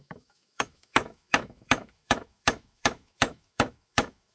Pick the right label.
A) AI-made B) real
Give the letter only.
A